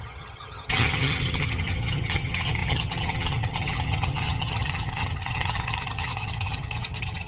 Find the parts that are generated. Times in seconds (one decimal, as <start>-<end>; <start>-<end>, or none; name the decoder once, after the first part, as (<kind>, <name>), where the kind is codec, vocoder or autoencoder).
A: 0.0-7.3 (vocoder, HiFi-GAN)